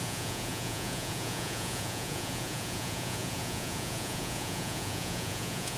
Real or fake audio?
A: fake